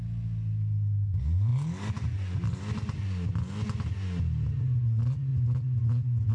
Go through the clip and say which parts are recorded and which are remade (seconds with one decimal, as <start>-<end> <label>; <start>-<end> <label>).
0.0-6.3 recorded